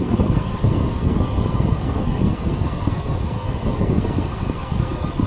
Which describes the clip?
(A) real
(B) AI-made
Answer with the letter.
B